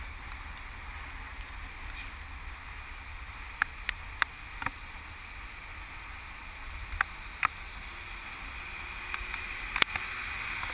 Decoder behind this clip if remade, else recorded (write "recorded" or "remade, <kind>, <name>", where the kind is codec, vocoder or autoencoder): recorded